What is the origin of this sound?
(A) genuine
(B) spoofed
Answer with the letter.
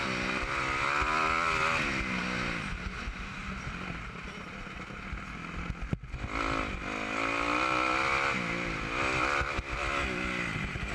A